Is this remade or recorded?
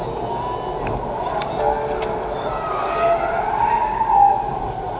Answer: recorded